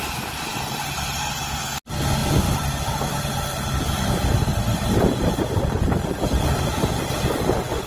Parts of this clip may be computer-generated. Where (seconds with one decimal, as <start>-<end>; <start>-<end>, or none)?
0.5-1.2; 2.2-6.9